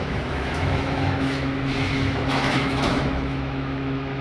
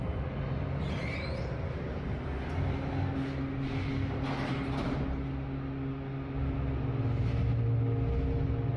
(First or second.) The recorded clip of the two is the second